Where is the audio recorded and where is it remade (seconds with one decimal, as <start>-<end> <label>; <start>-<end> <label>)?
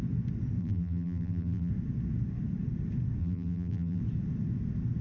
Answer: 0.0-0.6 recorded; 0.6-1.7 remade; 1.7-3.2 recorded; 3.2-4.0 remade; 4.0-5.0 recorded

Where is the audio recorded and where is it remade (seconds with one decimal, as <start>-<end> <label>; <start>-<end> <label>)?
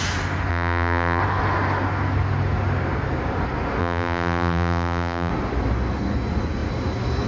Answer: 0.0-0.5 recorded; 0.5-1.2 remade; 1.2-3.8 recorded; 3.8-5.3 remade; 5.3-7.3 recorded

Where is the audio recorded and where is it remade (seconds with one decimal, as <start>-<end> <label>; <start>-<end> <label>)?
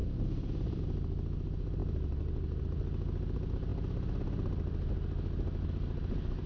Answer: 0.0-0.8 remade; 0.8-6.5 recorded